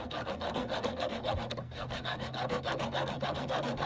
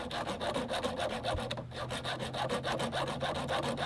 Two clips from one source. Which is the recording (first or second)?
second